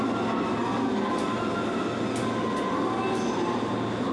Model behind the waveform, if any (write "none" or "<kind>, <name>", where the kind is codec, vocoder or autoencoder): none